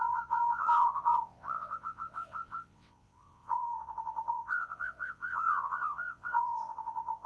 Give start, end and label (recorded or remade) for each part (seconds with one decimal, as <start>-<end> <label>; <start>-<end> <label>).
0.0-7.3 remade